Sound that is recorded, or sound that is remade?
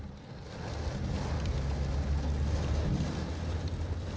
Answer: recorded